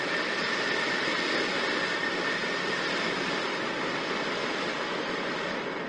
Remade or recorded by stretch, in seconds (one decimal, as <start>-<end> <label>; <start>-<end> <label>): 0.0-5.9 recorded